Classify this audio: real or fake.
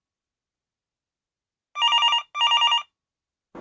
real